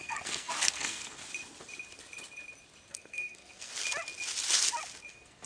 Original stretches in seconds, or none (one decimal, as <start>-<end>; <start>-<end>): 1.2-2.9; 3.7-5.1